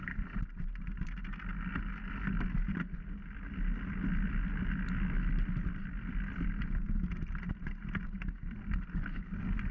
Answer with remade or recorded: recorded